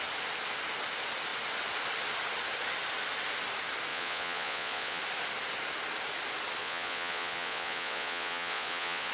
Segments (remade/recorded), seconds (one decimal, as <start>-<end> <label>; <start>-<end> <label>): 0.0-3.9 recorded; 3.9-5.0 remade; 5.0-6.6 recorded; 6.6-9.1 remade